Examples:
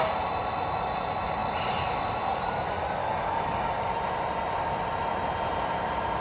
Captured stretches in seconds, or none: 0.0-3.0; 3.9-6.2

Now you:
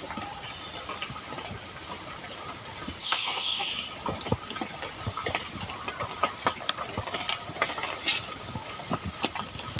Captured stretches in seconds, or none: 0.0-3.0; 3.7-9.8

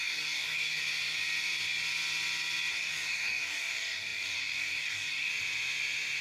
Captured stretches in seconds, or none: 0.8-2.7; 5.3-6.2

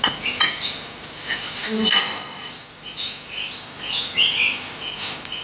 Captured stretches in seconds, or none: 0.0-1.8; 2.5-5.4

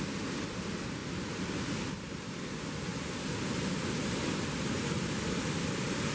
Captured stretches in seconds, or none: 0.0-6.1

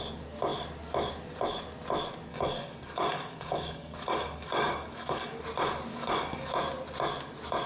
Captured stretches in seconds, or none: 0.0-2.3; 5.4-5.9; 6.5-7.7

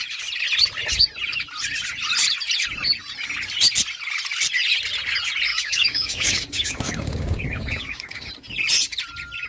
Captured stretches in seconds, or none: 0.0-5.5; 8.3-9.5